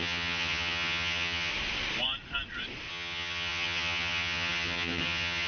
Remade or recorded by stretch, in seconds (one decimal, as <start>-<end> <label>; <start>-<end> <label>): 0.0-1.5 remade; 1.5-2.9 recorded; 2.9-5.5 remade